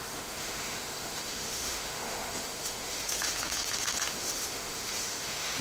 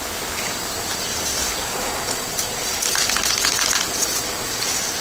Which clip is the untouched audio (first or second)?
second